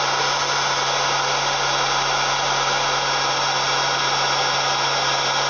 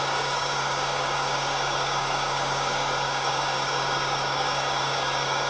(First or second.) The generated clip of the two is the second